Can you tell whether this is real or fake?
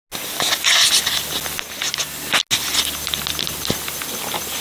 real